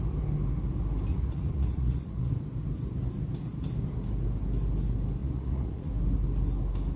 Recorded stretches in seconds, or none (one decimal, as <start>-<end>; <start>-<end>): 0.0-1.1; 2.3-5.2; 5.9-7.0